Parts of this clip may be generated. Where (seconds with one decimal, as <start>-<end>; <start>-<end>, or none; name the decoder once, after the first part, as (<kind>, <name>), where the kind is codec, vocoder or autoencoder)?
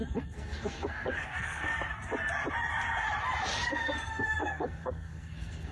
0.0-1.7 (codec, SNAC); 3.7-5.7